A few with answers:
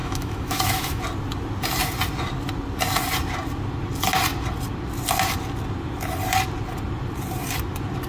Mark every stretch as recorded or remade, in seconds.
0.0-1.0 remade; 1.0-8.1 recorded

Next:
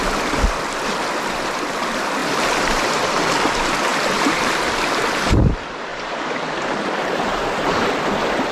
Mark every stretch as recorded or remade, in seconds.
0.0-2.2 recorded; 2.2-3.0 remade; 3.0-3.9 recorded; 3.9-4.5 remade; 4.5-5.9 recorded; 5.9-7.4 remade; 7.4-8.5 recorded

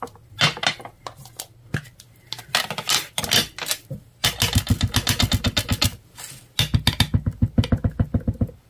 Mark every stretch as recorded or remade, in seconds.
0.0-8.7 recorded

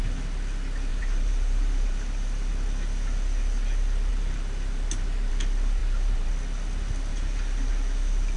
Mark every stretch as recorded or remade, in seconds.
0.0-0.9 recorded; 0.9-2.5 remade; 2.5-4.1 recorded; 4.1-5.3 remade; 5.3-5.8 recorded; 5.8-6.3 remade; 6.3-7.1 recorded; 7.1-7.7 remade; 7.7-8.4 recorded

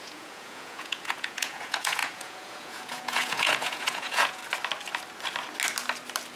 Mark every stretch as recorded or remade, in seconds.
0.0-4.4 remade; 4.4-6.4 recorded

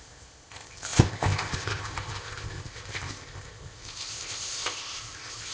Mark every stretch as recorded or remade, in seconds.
0.0-5.5 remade

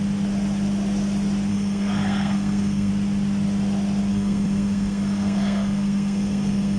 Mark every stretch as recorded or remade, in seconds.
0.0-1.5 recorded; 1.5-2.9 remade; 2.9-4.1 recorded; 4.1-6.8 remade

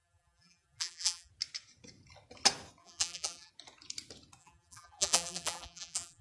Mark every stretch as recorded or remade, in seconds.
0.0-1.3 remade; 1.3-2.8 recorded; 2.8-3.5 remade; 3.5-4.4 recorded; 4.4-6.2 remade